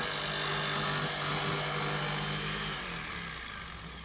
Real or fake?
real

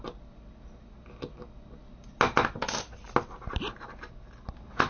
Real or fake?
real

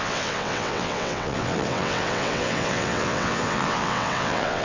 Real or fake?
fake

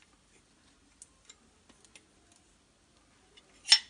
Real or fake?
real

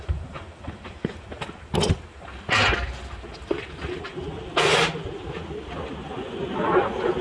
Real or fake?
real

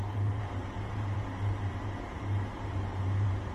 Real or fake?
fake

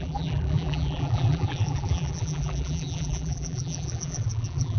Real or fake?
fake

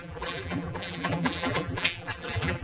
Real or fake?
fake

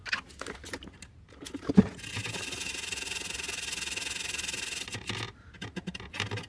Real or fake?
real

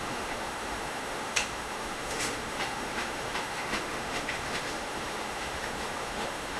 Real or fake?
fake